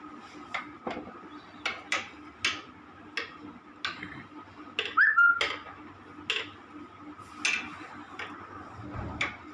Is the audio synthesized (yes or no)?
no